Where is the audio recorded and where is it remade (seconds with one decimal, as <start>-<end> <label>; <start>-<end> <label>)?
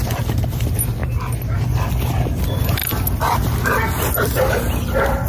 0.0-5.3 recorded